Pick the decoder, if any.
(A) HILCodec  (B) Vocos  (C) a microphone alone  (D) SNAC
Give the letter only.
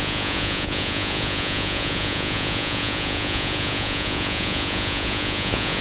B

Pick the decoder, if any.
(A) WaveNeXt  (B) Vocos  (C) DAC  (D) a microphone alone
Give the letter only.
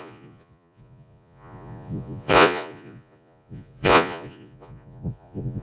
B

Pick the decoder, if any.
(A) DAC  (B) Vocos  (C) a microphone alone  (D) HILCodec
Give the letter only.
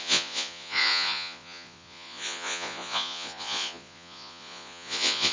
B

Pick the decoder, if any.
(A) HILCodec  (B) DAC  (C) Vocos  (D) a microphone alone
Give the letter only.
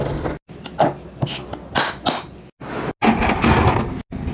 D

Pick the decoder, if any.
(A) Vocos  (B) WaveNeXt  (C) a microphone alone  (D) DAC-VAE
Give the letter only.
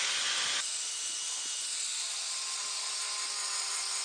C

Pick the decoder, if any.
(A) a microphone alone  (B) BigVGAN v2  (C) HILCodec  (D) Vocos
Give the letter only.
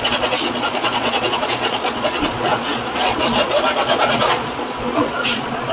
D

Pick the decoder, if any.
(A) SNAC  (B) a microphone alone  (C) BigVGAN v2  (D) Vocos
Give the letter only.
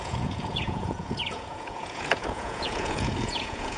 D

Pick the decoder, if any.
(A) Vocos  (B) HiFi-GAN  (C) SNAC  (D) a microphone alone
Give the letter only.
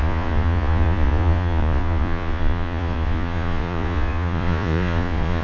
A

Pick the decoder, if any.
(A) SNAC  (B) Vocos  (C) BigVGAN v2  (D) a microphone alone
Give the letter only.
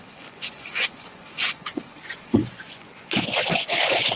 B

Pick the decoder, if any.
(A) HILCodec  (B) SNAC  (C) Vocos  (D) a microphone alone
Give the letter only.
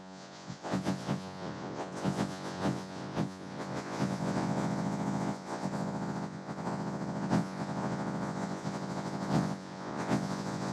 C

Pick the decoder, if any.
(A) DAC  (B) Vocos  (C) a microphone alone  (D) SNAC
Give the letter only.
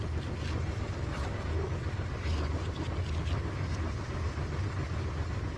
C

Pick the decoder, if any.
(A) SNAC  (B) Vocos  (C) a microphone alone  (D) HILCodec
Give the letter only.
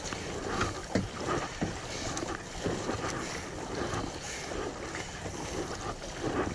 C